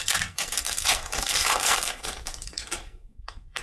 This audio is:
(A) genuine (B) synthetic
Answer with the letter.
B